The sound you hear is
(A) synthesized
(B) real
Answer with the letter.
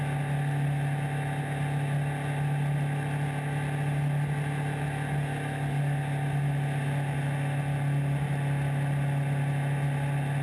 B